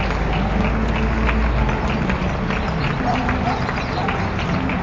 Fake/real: real